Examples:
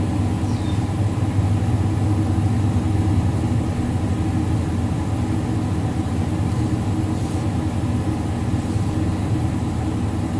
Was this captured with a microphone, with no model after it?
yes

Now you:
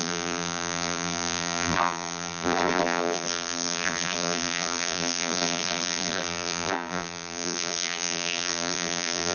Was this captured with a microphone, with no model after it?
no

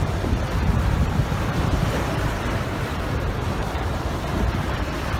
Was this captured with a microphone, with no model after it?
no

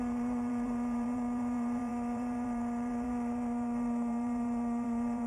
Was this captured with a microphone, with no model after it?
no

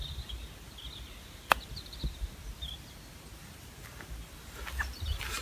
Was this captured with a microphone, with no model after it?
yes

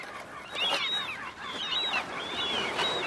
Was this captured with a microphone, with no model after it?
no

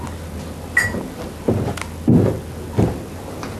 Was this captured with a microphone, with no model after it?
yes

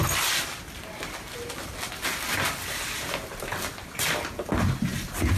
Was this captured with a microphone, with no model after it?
yes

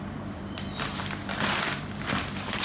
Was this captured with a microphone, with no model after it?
yes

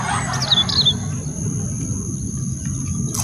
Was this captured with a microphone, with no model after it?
yes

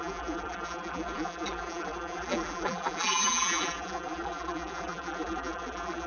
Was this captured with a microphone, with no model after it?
no